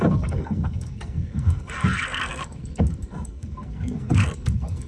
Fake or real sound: fake